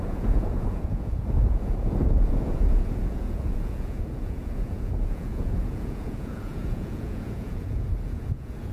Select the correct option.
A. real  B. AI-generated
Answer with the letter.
B